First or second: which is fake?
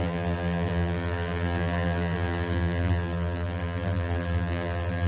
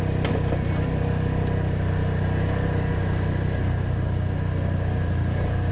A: first